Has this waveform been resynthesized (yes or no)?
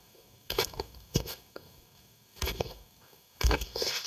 yes